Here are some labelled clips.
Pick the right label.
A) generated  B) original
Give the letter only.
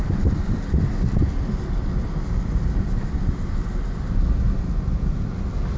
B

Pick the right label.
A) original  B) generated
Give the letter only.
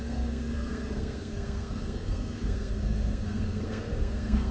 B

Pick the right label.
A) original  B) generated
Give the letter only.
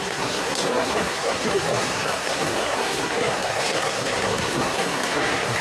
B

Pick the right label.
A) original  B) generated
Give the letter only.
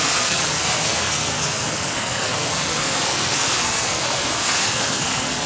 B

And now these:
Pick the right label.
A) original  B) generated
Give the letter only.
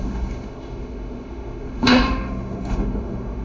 B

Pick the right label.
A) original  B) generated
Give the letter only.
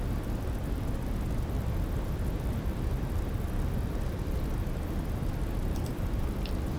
A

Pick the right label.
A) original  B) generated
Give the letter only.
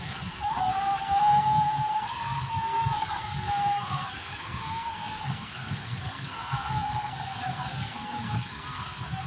B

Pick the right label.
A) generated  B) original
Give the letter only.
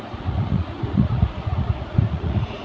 A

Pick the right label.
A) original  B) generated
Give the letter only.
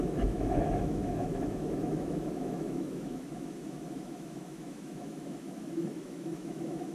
B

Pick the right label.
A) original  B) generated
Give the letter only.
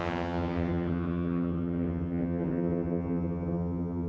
B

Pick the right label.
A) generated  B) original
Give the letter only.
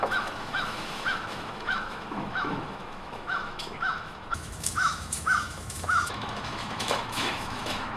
A